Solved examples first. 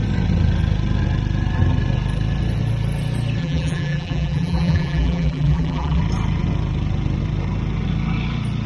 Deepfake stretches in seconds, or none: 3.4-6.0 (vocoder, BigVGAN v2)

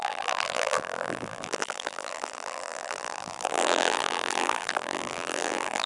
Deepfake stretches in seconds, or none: 0.0-5.9 (vocoder, BigVGAN v2)